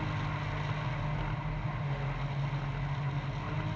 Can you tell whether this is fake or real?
real